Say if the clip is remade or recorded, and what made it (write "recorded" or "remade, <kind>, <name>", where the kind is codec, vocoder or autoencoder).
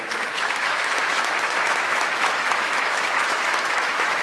remade, autoencoder, DAC-VAE